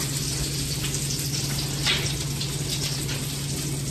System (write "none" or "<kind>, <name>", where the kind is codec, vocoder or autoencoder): none